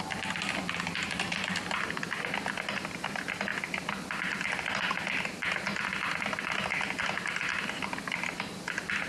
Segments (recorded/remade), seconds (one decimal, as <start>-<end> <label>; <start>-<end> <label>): 0.0-9.1 recorded